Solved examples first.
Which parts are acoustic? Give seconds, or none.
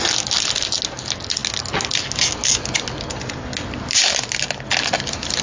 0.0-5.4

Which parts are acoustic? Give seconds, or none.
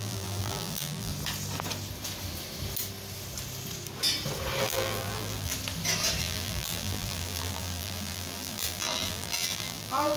1.1-4.6; 5.5-6.2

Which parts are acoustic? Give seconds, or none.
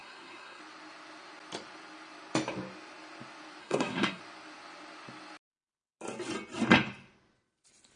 0.6-3.6; 4.2-8.0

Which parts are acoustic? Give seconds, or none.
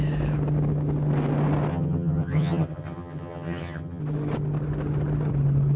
0.0-1.7; 4.0-5.8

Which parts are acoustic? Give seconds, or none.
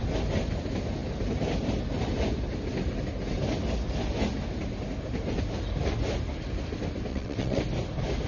0.0-7.1; 7.6-8.3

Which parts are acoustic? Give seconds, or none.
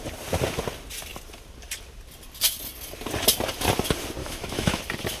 0.0-4.2; 4.8-5.2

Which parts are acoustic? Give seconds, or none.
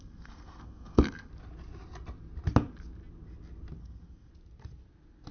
1.3-3.8; 4.3-5.3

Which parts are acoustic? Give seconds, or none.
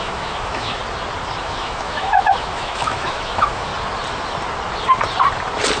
0.8-1.4; 3.7-5.8